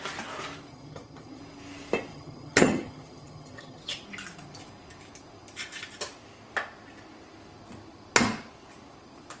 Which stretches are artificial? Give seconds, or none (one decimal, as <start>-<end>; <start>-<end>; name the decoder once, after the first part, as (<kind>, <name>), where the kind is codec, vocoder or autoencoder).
0.7-1.4 (vocoder, HiFi-GAN); 2.1-3.8